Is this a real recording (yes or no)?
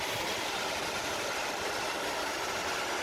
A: yes